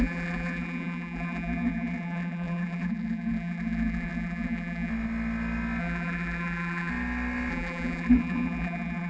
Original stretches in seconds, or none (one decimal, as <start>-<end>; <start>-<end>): 4.9-5.8; 6.9-7.5